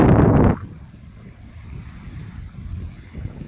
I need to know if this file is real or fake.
real